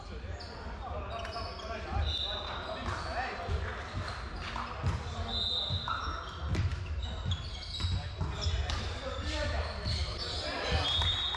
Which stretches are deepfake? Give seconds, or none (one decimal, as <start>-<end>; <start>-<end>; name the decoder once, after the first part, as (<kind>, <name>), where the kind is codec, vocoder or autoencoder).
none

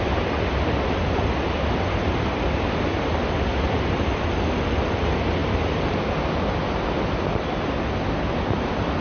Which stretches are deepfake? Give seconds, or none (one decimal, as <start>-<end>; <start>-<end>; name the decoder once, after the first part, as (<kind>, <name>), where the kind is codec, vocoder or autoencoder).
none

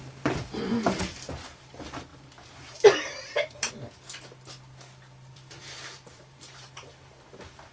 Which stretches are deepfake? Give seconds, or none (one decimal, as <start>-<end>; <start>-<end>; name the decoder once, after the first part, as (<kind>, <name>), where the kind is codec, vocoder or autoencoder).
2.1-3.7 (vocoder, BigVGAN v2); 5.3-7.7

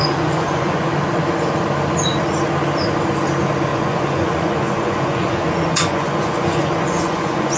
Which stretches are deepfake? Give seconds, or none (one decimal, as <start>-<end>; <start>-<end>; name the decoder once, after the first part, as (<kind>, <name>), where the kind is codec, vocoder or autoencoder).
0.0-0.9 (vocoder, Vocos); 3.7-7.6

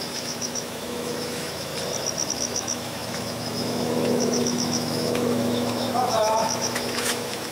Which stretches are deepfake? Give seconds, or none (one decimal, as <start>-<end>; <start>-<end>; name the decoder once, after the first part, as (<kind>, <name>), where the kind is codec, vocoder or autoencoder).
0.0-1.7 (autoencoder, DAC-VAE); 2.3-7.5